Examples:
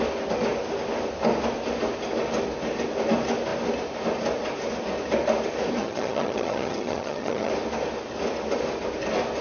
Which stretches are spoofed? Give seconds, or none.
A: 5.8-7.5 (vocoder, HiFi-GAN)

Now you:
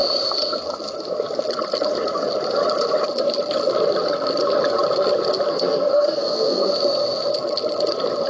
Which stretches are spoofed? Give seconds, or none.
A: 5.5-6.7 (codec, SNAC)

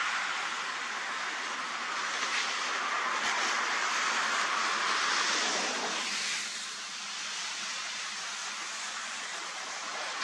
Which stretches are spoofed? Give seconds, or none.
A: 8.4-9.2 (vocoder, Vocos)

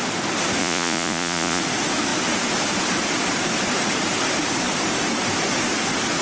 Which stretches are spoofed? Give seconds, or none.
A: 0.6-1.6 (vocoder, Vocos)

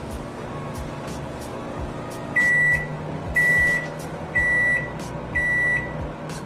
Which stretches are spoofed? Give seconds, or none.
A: none